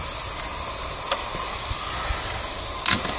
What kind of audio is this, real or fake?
real